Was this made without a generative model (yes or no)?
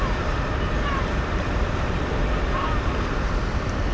no